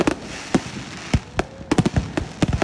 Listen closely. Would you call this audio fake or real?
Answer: real